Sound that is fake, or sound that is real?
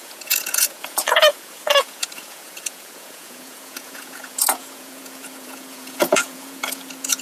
fake